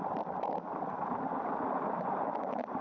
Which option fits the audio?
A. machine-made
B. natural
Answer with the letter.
B